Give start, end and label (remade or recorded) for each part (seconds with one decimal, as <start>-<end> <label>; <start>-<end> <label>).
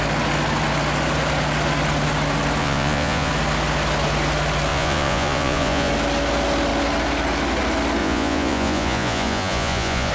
0.0-2.6 recorded; 2.6-3.3 remade; 3.3-4.7 recorded; 4.7-5.9 remade; 5.9-8.0 recorded; 8.0-10.1 remade